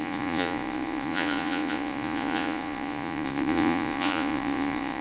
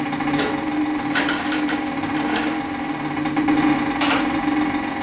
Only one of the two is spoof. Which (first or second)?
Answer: first